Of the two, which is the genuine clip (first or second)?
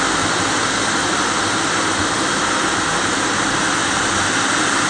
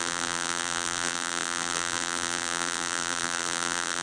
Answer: first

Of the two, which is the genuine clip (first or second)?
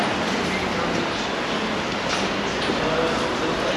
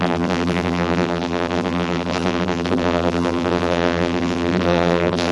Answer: first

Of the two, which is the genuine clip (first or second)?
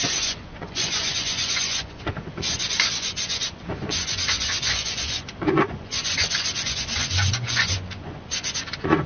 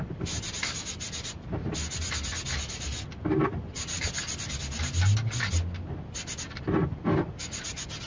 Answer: second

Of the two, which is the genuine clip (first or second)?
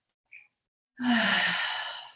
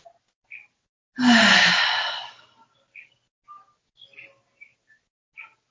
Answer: second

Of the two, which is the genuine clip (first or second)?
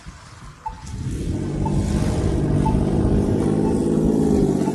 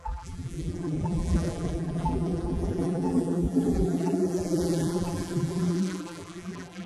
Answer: first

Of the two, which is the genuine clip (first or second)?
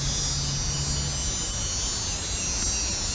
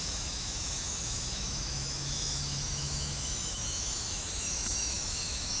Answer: first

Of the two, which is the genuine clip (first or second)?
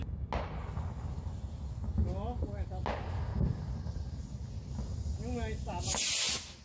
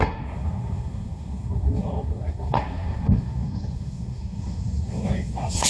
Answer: first